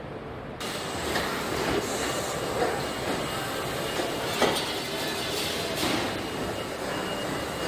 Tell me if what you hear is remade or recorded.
recorded